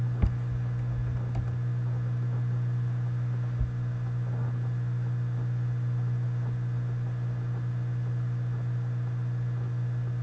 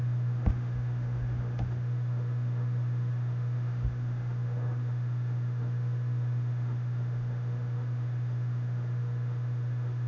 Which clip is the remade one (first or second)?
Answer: second